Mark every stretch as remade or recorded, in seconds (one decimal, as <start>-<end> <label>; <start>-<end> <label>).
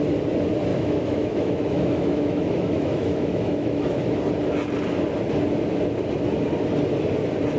0.0-0.7 recorded; 0.7-4.2 remade; 4.2-7.6 recorded